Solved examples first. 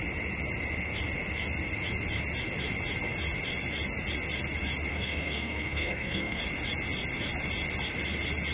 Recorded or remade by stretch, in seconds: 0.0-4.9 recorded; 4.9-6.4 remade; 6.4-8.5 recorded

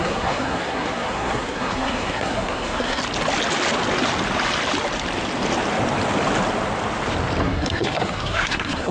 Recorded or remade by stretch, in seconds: 0.0-3.0 remade; 3.0-7.4 recorded; 7.4-8.9 remade